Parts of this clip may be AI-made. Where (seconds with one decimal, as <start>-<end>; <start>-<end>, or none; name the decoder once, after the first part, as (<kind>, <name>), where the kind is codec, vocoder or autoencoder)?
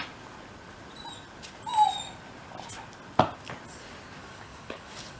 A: 4.2-5.2 (codec, DAC)